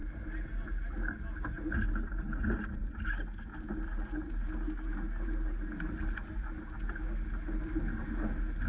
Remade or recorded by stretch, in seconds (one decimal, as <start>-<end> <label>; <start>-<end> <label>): 0.0-8.7 recorded